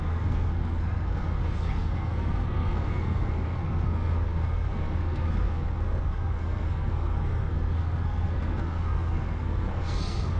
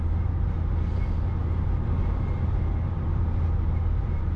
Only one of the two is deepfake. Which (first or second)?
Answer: first